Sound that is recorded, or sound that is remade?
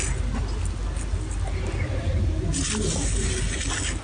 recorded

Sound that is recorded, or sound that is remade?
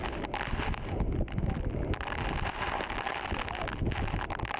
recorded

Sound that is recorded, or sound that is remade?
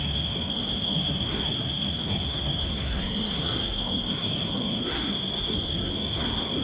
remade